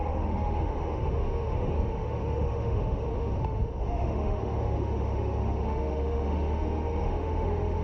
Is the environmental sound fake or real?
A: fake